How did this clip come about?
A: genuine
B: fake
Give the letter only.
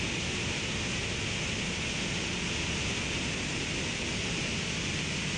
A